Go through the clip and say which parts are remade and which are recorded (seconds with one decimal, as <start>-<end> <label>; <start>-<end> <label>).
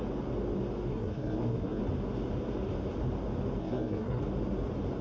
0.0-0.9 recorded; 0.9-1.8 remade; 1.8-3.6 recorded; 3.6-4.2 remade; 4.2-5.0 recorded